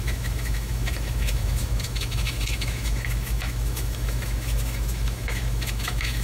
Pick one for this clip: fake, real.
fake